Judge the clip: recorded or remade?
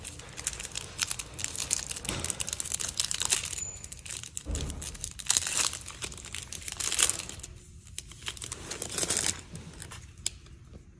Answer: recorded